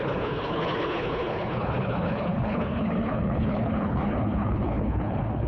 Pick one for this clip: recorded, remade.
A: remade